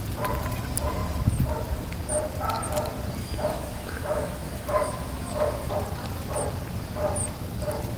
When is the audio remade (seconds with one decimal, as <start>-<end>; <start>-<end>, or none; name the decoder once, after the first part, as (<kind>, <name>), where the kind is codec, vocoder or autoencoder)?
3.2-5.7 (autoencoder, DAC-VAE)